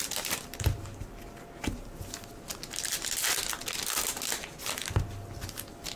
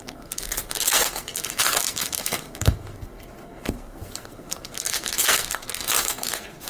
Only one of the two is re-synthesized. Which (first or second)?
second